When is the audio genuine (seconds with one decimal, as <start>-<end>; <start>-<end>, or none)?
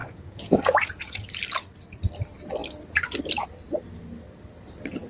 1.3-5.1